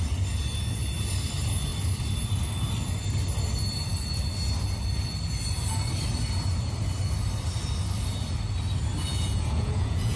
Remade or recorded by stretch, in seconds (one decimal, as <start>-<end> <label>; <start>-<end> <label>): 0.0-9.1 recorded; 9.1-10.2 remade